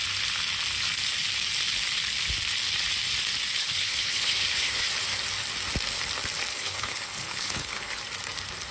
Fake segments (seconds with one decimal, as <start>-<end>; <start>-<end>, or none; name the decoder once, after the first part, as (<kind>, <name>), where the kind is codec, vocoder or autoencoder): 3.6-4.9 (codec, HILCodec); 6.5-8.0